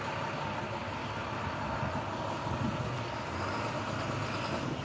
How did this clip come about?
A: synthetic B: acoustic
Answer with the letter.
B